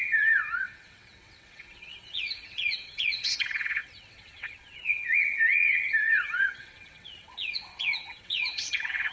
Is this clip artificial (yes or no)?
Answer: yes